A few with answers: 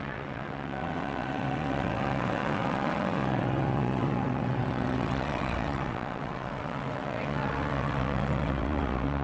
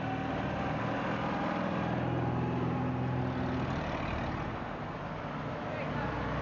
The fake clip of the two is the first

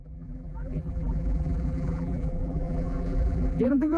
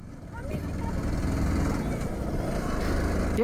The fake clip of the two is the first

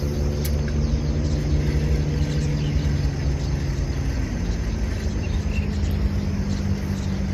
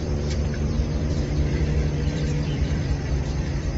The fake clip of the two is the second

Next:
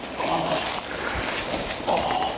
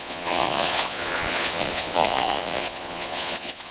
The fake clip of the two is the second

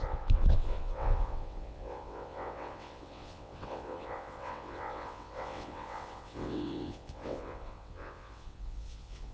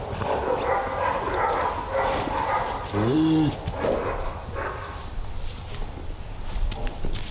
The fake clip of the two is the first